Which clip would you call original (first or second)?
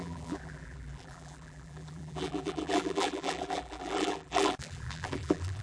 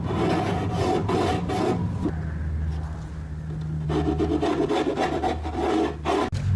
second